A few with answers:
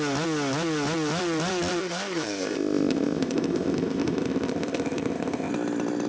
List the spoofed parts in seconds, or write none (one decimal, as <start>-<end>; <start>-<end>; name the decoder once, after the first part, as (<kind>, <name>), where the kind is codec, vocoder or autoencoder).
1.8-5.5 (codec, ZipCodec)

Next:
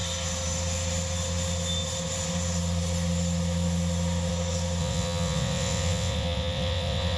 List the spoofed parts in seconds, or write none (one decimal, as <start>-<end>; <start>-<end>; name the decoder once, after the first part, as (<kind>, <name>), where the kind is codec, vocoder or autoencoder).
4.8-7.2 (vocoder, WaveNeXt)

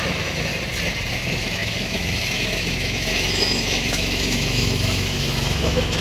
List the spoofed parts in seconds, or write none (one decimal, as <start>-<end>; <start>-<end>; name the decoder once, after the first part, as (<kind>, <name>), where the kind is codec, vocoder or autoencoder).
0.0-0.5 (autoencoder, DAC-VAE); 1.1-6.0

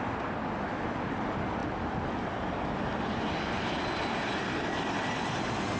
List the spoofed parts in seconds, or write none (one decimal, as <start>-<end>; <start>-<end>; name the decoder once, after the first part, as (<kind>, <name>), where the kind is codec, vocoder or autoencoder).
none